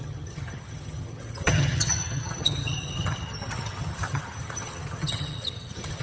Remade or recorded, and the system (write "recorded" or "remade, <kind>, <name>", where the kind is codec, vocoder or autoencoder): remade, vocoder, HiFi-GAN